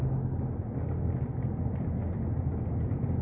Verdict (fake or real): real